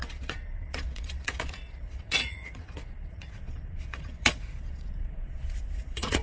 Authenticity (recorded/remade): remade